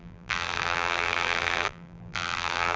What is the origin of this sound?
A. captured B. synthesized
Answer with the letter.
B